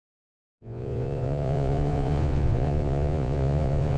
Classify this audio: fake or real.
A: fake